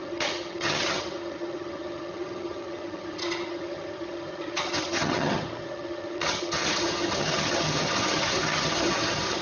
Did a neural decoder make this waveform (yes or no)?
yes